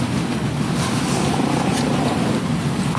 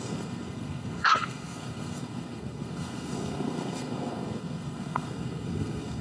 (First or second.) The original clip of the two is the first